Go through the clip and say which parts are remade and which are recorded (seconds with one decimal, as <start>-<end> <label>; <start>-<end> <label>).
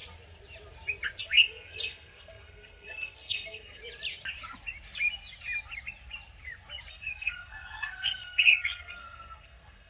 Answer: 0.0-1.2 recorded; 1.2-3.8 remade; 3.8-6.9 recorded; 6.9-9.9 remade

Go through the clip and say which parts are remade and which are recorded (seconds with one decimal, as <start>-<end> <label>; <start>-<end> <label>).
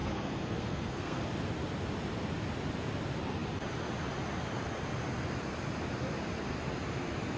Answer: 0.0-1.3 remade; 1.3-7.4 recorded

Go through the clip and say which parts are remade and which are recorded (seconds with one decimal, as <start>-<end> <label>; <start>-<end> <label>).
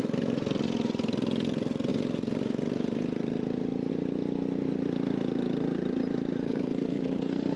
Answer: 0.0-6.4 recorded; 6.4-7.6 remade